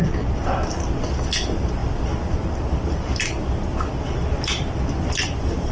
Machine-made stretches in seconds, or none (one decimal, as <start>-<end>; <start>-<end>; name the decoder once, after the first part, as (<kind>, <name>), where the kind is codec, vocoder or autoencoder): none

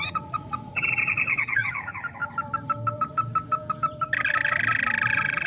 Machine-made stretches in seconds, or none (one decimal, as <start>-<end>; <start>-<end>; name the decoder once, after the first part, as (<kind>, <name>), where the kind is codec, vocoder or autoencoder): 0.0-2.2 (vocoder, Vocos); 5.1-5.5

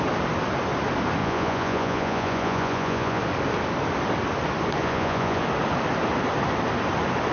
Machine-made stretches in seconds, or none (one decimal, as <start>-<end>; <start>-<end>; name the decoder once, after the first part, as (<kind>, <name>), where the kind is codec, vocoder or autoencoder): 1.2-3.2 (vocoder, Vocos); 4.8-5.4

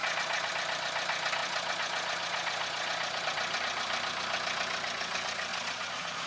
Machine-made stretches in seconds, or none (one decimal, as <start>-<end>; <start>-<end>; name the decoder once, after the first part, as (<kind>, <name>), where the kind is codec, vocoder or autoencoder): 0.0-0.5 (vocoder, Vocos); 1.4-3.2; 5.5-6.3